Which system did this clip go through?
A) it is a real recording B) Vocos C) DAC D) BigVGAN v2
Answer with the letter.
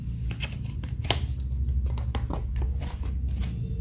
A